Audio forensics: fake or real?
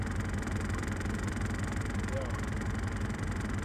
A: real